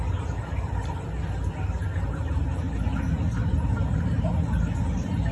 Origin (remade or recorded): recorded